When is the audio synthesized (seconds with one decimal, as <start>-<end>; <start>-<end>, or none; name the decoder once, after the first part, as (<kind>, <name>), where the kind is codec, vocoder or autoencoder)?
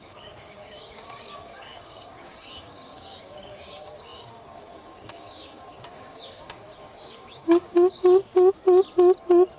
0.0-8.2 (codec, DAC)